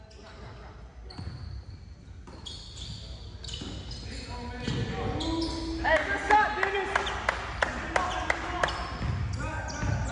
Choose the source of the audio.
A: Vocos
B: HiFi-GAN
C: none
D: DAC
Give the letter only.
C